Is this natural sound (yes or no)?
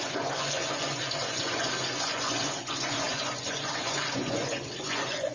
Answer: no